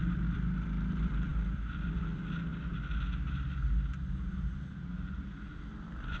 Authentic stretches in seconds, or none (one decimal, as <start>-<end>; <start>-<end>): 2.5-5.5